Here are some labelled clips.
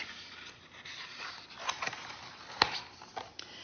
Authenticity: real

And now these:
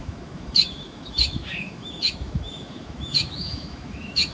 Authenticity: fake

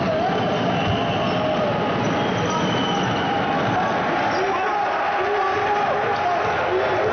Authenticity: real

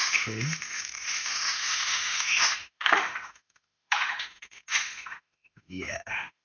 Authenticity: fake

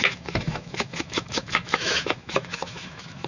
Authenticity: fake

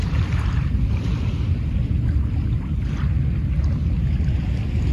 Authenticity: real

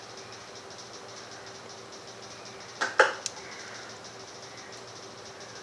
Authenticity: real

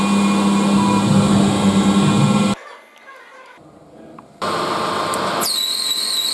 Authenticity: real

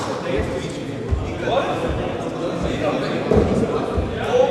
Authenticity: real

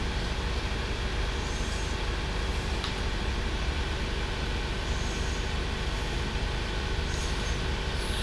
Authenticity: real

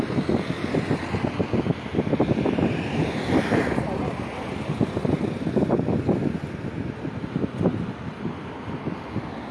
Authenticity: real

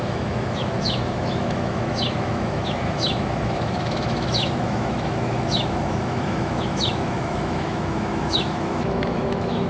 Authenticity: fake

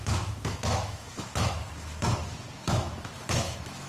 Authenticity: fake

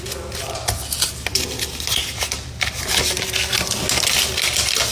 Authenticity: real